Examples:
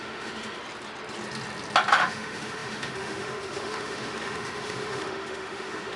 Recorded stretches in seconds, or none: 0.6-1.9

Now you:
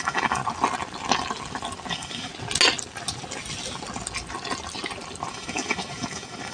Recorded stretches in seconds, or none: 0.4-1.9; 2.3-5.3

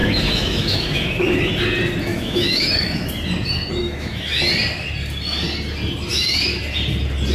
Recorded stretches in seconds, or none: 1.5-2.1; 3.1-3.8; 4.4-6.1; 6.6-7.3